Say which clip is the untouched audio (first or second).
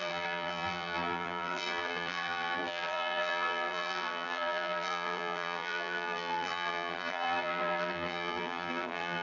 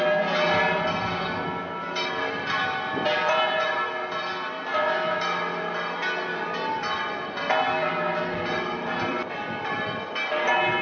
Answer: second